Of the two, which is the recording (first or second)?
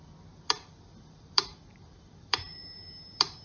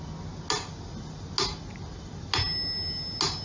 second